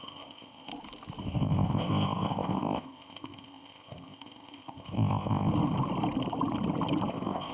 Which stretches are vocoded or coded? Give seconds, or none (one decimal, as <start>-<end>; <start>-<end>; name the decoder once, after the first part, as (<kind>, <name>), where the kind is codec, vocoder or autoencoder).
0.0-0.7 (codec, ZipCodec); 1.2-5.5; 7.1-7.5